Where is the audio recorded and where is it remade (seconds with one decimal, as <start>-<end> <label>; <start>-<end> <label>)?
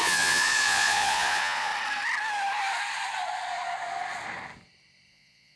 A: 0.0-1.7 remade; 1.7-5.1 recorded; 5.1-5.6 remade